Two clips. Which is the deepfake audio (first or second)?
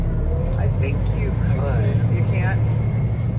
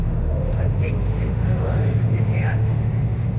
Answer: second